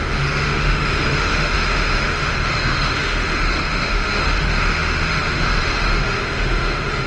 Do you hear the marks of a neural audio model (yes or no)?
yes